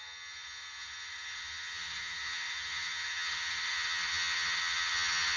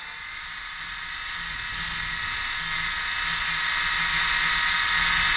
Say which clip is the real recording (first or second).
second